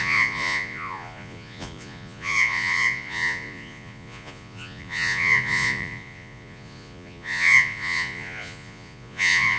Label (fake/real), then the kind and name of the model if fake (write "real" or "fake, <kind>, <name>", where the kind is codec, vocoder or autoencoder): fake, vocoder, Vocos